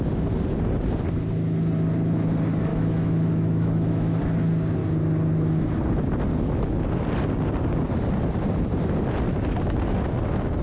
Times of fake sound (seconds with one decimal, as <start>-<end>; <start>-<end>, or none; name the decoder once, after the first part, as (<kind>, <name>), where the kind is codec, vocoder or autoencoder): 2.7-4.2 (autoencoder, DAC-VAE)